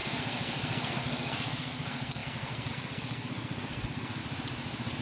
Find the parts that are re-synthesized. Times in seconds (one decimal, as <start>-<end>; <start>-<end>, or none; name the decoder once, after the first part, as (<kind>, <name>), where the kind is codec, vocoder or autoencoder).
0.0-4.2 (codec, SNAC)